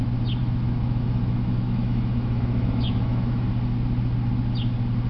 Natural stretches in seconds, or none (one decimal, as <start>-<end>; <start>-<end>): 0.0-0.4; 3.5-5.1